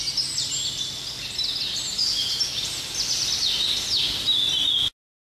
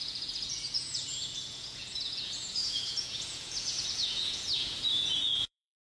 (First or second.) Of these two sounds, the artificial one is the second